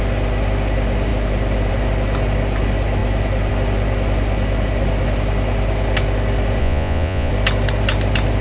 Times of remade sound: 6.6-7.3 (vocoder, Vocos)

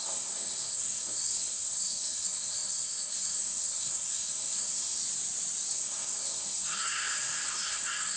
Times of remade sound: 0.0-5.0 (codec, SNAC); 5.7-8.2